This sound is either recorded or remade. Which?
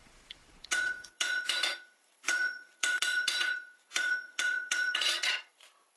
remade